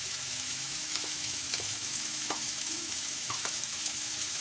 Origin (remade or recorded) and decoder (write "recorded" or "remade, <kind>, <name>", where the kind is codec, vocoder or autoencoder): remade, autoencoder, DAC-VAE